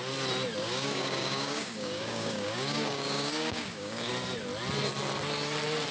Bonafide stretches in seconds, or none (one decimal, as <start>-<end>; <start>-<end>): 0.0-0.6; 4.1-5.9